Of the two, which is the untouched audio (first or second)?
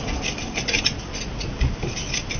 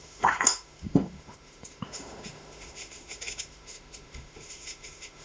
first